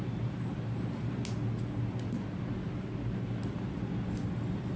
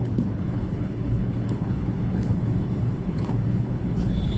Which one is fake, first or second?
second